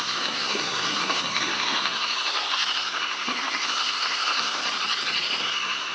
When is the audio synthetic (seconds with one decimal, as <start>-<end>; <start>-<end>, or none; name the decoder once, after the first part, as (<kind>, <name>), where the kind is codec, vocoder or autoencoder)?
0.0-4.6 (codec, SNAC); 5.4-5.9